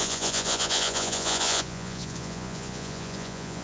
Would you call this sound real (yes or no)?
no